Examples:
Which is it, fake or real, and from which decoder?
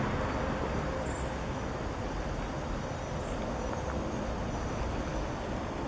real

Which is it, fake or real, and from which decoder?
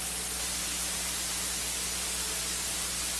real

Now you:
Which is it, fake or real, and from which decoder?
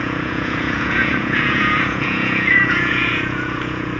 fake, vocoder, Vocos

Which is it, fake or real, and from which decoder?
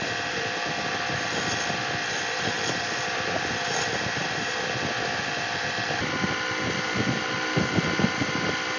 real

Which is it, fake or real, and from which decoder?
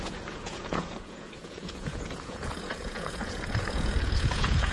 fake, vocoder, Vocos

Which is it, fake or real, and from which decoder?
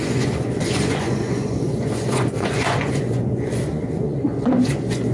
fake, vocoder, Vocos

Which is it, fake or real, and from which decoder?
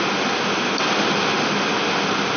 real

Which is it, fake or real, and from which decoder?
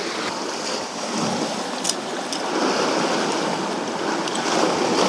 real